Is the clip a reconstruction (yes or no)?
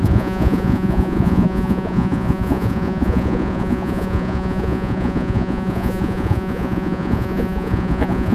yes